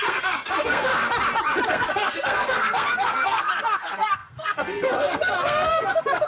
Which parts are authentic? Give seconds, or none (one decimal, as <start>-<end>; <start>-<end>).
0.9-1.7